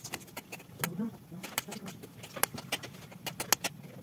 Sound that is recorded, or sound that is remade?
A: recorded